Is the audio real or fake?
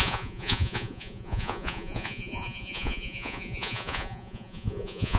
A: fake